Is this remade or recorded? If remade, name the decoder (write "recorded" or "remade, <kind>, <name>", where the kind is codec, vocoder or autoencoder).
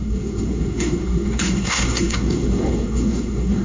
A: remade, codec, SNAC